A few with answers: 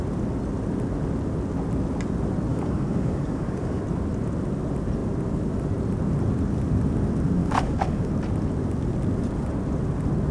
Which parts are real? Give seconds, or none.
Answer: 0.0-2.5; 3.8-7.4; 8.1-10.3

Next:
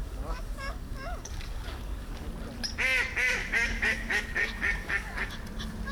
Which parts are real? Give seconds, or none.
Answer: 2.3-3.4; 5.3-5.9

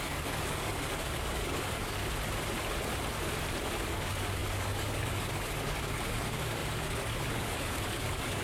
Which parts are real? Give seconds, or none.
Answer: 2.0-3.9

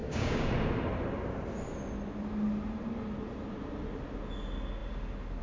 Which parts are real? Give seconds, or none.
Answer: 0.5-5.4

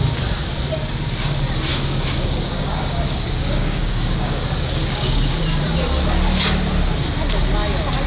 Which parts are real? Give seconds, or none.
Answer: 0.0-1.7; 5.4-8.1

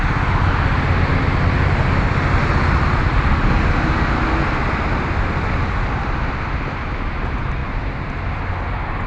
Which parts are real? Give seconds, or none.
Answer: 0.0-9.1

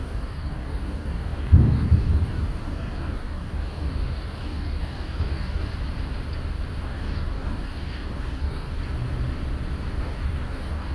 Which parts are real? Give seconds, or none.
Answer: 5.7-6.8; 8.8-10.0

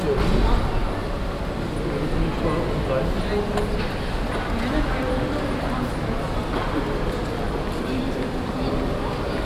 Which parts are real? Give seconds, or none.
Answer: 0.0-9.5